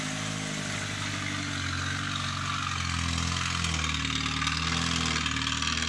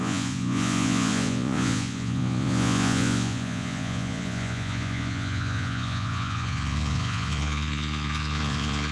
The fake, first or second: second